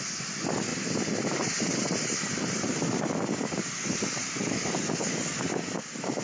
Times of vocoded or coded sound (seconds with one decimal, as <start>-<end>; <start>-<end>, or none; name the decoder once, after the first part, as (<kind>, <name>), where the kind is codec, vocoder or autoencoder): 0.7-4.4 (vocoder, BigVGAN v2)